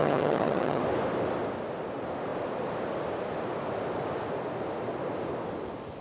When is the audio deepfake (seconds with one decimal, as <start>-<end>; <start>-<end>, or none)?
0.0-0.8